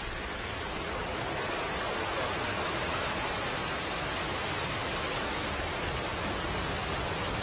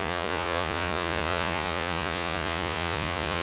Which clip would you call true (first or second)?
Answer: first